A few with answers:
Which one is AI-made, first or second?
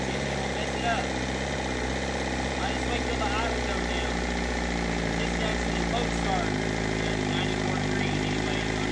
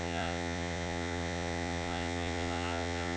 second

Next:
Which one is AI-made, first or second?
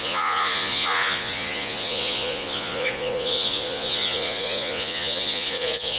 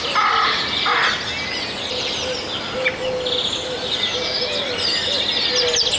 first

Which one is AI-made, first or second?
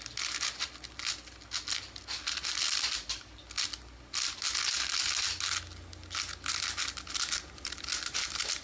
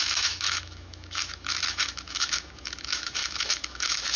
second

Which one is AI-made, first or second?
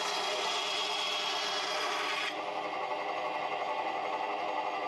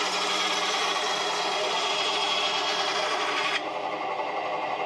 second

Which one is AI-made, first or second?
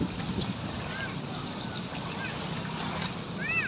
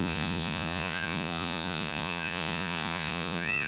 second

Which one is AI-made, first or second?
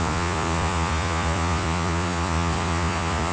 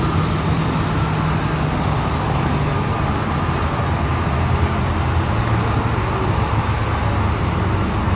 first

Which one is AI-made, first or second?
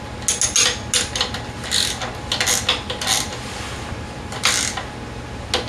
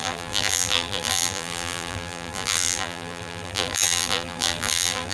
second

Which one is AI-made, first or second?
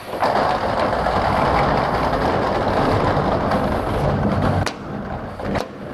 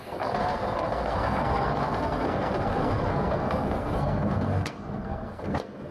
second